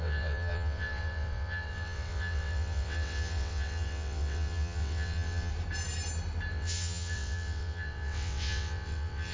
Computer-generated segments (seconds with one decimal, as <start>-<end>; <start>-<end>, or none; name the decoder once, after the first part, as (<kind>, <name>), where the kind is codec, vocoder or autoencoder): 0.0-5.5 (vocoder, WaveNeXt); 6.5-9.3